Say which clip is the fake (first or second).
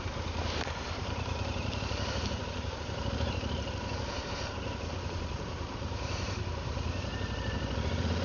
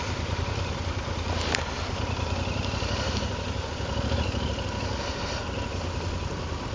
first